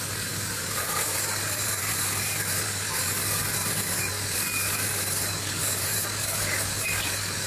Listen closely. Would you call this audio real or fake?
fake